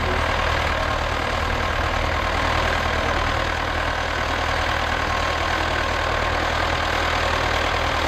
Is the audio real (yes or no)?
yes